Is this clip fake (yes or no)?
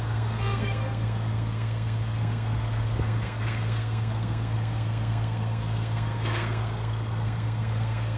yes